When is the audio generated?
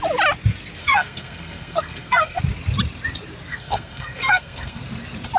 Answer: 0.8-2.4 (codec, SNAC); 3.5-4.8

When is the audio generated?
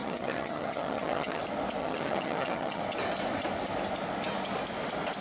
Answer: 0.0-1.4 (vocoder, HiFi-GAN); 1.8-2.8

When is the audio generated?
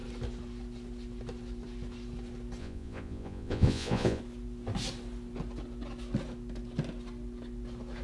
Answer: 2.6-4.2 (vocoder, Vocos)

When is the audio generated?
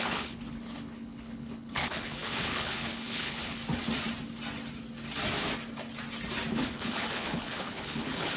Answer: 0.0-3.6 (codec, HILCodec); 6.5-8.4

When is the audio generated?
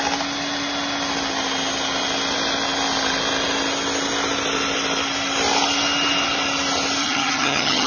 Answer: 7.0-7.9 (vocoder, HiFi-GAN)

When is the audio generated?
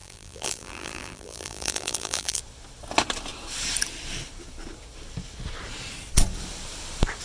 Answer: 0.0-2.4 (vocoder, BigVGAN v2)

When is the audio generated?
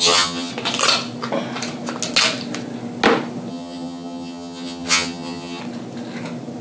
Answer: 0.0-0.5 (vocoder, HiFi-GAN); 3.5-5.6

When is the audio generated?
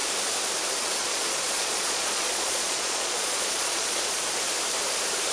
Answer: 1.0-4.2 (vocoder, Vocos)